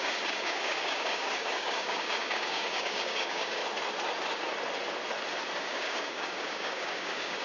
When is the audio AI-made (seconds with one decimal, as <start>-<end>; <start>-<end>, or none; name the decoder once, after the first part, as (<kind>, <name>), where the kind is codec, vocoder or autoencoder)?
0.0-3.6 (codec, DAC); 5.6-7.4